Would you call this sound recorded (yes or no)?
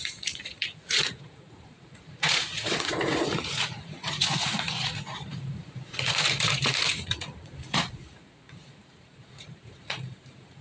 no